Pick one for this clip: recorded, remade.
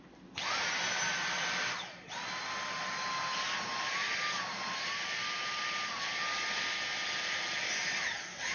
recorded